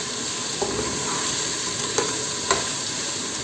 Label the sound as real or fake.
real